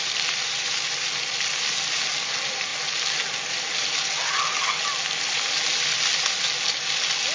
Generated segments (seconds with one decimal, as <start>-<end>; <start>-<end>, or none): none